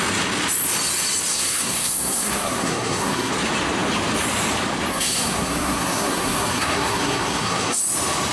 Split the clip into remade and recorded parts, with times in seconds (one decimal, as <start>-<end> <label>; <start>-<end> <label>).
0.0-1.3 recorded; 1.3-3.3 remade; 3.3-4.9 recorded; 4.9-7.8 remade; 7.8-8.3 recorded